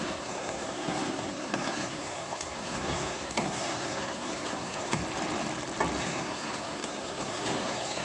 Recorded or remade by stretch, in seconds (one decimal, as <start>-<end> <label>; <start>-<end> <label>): 0.0-5.0 remade; 5.0-6.0 recorded; 6.0-8.0 remade